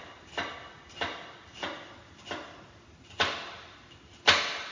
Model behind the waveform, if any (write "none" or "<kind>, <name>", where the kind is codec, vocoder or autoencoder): none